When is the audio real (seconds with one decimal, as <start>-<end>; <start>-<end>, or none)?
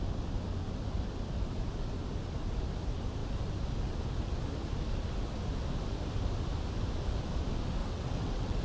0.0-7.8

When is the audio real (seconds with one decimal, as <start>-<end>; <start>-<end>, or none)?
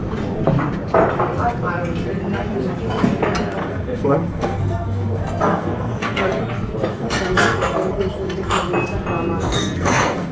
0.0-3.6; 6.4-6.9; 8.6-9.5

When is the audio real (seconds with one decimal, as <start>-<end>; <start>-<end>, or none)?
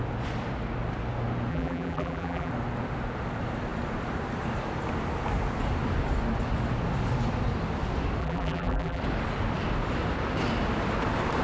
0.0-1.5; 2.5-8.2; 9.0-11.4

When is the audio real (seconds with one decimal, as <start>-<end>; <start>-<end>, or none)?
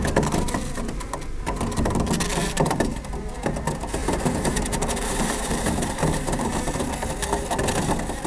0.0-2.4; 3.1-4.0; 6.5-8.3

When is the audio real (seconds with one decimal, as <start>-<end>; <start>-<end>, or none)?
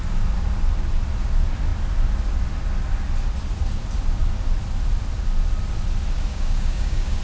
0.0-6.3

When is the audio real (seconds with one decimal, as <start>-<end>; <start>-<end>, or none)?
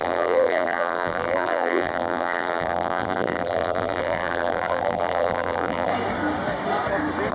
5.9-7.3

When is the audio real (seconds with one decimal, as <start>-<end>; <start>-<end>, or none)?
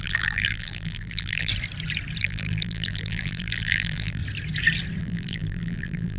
1.5-2.2; 4.2-5.0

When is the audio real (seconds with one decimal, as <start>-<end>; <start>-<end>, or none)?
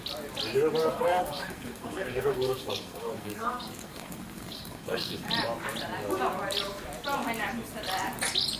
0.0-0.8; 5.3-8.6